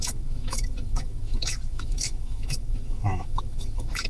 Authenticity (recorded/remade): remade